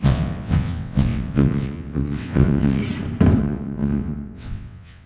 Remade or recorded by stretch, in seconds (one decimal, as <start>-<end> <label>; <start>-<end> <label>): 0.0-2.8 remade; 2.8-3.4 recorded; 3.4-5.1 remade